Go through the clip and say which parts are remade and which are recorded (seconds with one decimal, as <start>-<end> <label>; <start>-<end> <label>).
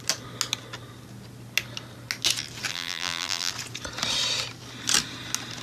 0.0-2.7 recorded; 2.7-3.5 remade; 3.5-5.6 recorded